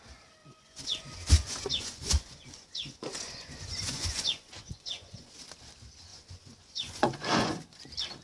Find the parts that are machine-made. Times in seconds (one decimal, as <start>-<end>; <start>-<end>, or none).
0.4-5.3; 6.1-7.6